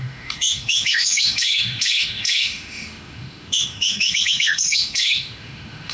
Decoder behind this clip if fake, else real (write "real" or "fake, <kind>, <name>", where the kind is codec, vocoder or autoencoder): fake, autoencoder, DAC-VAE